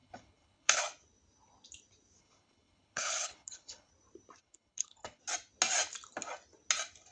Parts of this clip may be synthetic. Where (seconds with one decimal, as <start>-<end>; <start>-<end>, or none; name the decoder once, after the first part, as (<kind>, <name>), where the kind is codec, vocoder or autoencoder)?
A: 0.0-0.8 (codec, HILCodec); 2.2-3.9; 4.4-5.2